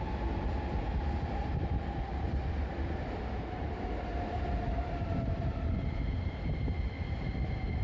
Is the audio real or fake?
real